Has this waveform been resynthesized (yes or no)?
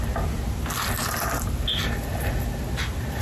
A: no